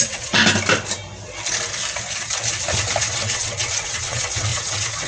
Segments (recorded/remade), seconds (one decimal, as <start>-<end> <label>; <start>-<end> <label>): 0.0-0.4 remade; 0.4-3.0 recorded; 3.0-5.1 remade